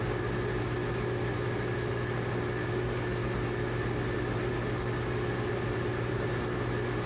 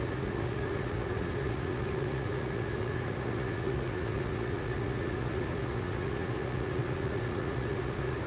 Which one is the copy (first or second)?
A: second